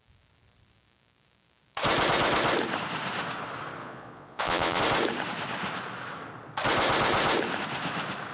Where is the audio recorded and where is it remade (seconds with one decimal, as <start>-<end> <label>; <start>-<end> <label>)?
0.0-3.8 recorded; 3.8-4.8 remade; 4.8-8.3 recorded